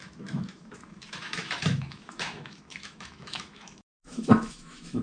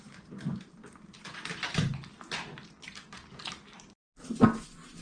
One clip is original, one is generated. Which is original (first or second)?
second